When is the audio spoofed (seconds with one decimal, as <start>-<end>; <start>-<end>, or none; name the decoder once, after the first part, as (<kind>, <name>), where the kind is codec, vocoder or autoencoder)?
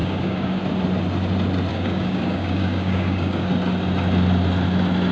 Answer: 0.0-0.6 (codec, DAC); 1.7-3.5